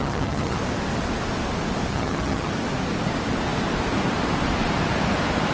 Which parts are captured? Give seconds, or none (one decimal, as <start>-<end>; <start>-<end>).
0.6-1.9; 2.5-5.5